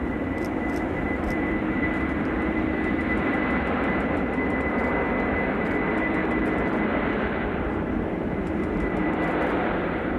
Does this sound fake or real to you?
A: fake